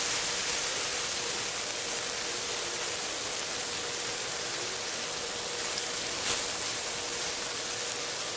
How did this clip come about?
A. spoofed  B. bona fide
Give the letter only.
B